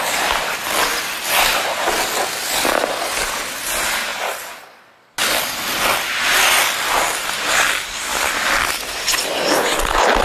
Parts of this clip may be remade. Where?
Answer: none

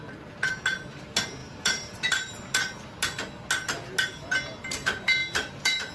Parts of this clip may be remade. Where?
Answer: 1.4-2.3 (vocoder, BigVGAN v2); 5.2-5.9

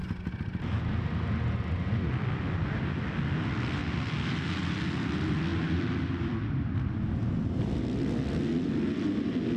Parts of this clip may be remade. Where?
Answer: none

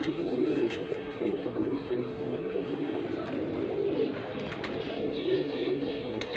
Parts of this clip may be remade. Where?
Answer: 0.0-3.0 (codec, SNAC); 4.9-6.4

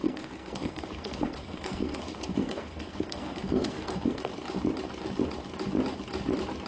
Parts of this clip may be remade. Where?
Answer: 0.0-4.3 (codec, SNAC)

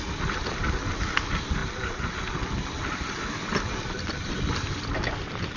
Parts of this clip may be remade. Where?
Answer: none

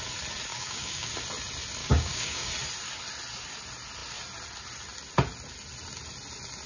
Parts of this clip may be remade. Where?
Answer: 0.5-1.1 (codec, DAC); 1.8-2.5

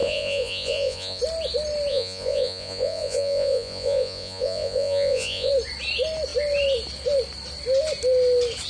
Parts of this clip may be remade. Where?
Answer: 0.0-1.2 (vocoder, Vocos); 1.9-5.5